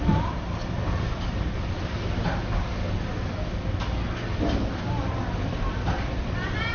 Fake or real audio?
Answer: real